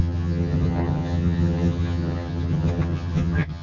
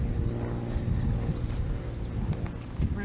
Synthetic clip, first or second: first